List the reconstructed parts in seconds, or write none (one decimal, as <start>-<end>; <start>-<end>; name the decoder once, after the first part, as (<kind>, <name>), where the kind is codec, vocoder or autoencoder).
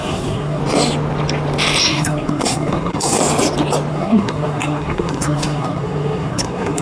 0.0-0.6 (codec, SNAC); 1.8-3.2; 3.9-6.8